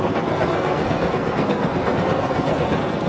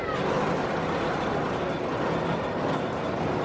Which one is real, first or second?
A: second